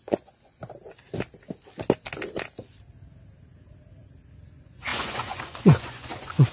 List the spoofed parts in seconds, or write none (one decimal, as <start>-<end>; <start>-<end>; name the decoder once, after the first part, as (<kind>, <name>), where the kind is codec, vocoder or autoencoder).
0.0-0.6 (vocoder, Vocos); 4.5-6.5